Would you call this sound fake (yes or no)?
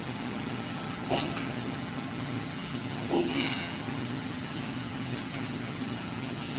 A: yes